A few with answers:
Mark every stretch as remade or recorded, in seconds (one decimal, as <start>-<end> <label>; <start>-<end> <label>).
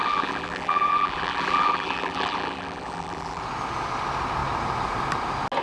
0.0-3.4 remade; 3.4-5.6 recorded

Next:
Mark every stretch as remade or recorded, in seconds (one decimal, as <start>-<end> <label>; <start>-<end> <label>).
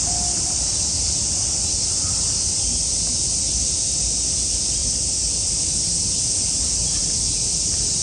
0.0-4.8 recorded; 4.8-5.5 remade; 5.5-8.0 recorded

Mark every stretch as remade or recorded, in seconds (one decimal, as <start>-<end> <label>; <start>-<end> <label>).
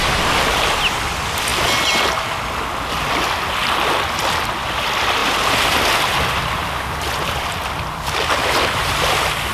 0.0-9.5 recorded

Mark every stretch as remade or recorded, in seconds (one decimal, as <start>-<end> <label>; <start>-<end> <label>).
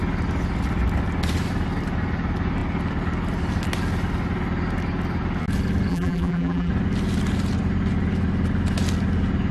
0.0-5.9 recorded; 5.9-6.7 remade; 6.7-9.5 recorded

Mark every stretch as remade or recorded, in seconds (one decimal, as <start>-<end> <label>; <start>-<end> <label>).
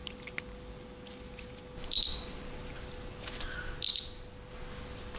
0.0-5.2 recorded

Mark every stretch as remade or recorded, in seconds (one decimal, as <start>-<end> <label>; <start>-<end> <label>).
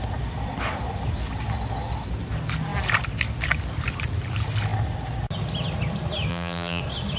0.0-6.3 recorded; 6.3-6.8 remade; 6.8-7.2 recorded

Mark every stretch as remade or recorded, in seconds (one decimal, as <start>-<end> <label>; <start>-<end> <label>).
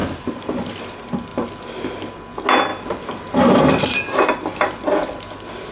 0.0-0.8 remade; 0.8-1.3 recorded; 1.3-2.1 remade; 2.1-2.7 recorded; 2.7-3.6 remade; 3.6-5.7 recorded